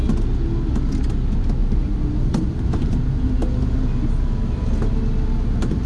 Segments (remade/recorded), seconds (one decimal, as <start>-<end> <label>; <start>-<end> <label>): 0.0-1.6 recorded; 1.6-3.4 remade; 3.4-5.9 recorded